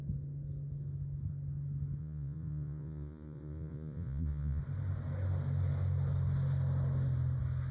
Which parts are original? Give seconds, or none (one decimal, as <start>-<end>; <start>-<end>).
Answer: 0.0-2.0; 4.6-7.7